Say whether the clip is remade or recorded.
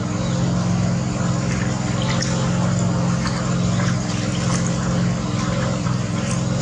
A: recorded